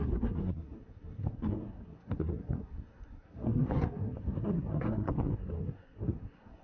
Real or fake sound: fake